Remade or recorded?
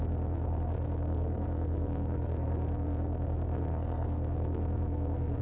remade